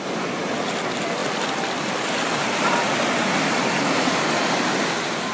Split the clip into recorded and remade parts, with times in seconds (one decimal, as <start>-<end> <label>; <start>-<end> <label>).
0.0-5.3 recorded